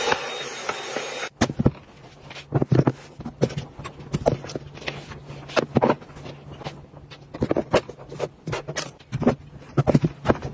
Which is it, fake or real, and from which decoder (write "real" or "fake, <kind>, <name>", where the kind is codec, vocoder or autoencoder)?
real